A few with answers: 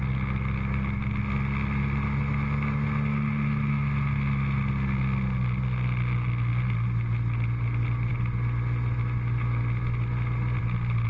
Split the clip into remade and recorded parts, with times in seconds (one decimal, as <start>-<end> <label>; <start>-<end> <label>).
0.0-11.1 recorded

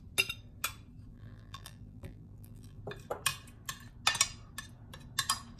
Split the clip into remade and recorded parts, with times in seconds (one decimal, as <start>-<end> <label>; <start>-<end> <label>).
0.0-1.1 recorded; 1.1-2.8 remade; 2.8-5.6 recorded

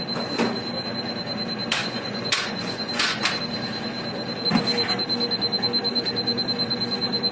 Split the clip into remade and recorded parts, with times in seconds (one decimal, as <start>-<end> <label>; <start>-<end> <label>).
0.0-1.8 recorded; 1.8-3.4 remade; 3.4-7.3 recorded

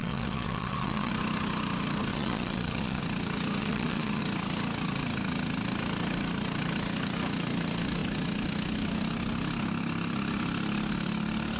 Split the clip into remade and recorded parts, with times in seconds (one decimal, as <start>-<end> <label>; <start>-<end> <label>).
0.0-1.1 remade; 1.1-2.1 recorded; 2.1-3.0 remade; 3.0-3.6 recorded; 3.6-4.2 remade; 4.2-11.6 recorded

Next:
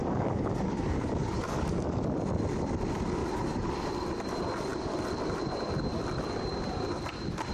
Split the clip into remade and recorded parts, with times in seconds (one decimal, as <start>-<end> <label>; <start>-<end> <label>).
0.0-2.0 remade; 2.0-3.2 recorded; 3.2-3.7 remade; 3.7-7.5 recorded

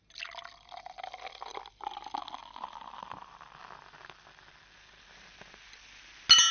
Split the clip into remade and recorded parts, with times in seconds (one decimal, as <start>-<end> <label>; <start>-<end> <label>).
0.0-6.5 recorded

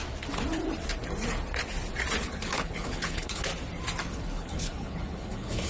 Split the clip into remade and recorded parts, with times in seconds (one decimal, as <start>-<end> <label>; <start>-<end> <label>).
0.0-2.2 recorded; 2.2-3.5 remade; 3.5-4.0 recorded; 4.0-5.7 remade